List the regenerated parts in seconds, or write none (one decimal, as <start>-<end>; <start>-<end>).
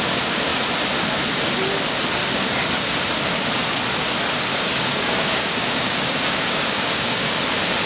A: 4.5-7.4